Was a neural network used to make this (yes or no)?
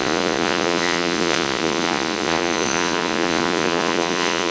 yes